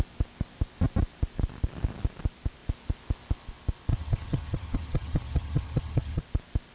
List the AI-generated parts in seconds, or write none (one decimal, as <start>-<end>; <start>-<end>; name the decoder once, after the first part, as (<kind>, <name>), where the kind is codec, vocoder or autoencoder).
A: 3.9-6.2 (vocoder, HiFi-GAN)